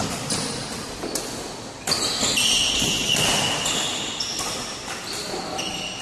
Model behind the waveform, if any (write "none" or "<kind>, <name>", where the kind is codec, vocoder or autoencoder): none